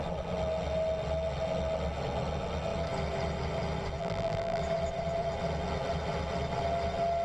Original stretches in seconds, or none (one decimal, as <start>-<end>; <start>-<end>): 0.0-4.0; 4.6-7.2